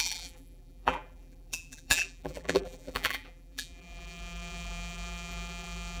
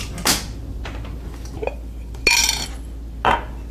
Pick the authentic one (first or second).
second